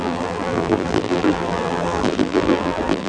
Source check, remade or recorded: remade